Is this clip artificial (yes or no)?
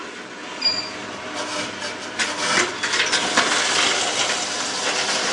no